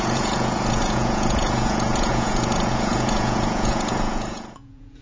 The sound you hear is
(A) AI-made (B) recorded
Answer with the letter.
A